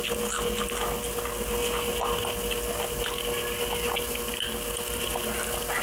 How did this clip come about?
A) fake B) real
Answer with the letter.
B